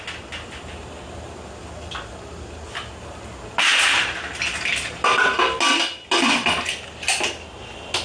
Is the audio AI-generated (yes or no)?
no